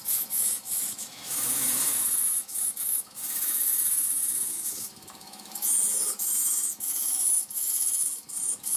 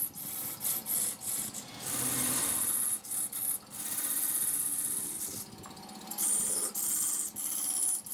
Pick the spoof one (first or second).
first